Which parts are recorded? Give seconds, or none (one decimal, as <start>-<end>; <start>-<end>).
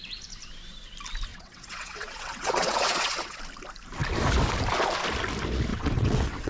0.0-1.3; 3.4-5.7